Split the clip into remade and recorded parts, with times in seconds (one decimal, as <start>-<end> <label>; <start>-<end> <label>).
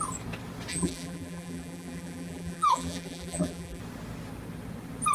0.0-0.7 recorded; 0.7-3.8 remade; 3.8-5.1 recorded